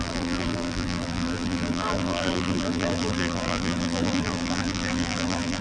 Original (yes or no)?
no